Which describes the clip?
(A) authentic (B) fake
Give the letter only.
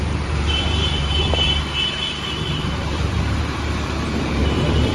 B